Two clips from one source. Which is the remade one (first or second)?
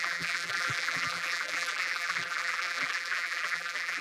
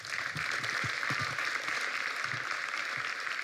first